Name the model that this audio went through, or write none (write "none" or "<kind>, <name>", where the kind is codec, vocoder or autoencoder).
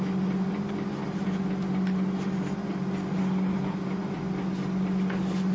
none